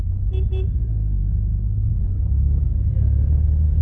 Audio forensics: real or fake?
real